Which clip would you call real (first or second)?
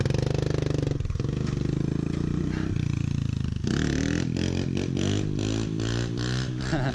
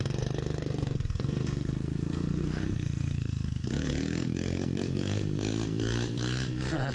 first